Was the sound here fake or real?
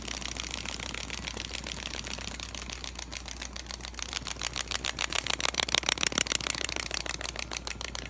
real